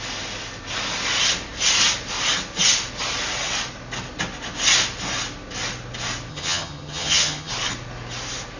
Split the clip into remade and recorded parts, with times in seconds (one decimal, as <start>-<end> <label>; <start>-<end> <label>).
0.0-6.3 recorded; 6.3-7.5 remade; 7.5-8.6 recorded